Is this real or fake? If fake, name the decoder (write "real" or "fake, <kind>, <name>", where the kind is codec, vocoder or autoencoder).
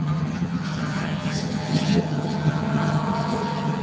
fake, vocoder, HiFi-GAN